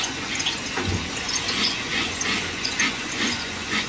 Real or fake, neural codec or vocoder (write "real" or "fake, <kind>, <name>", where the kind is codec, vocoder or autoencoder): fake, vocoder, Vocos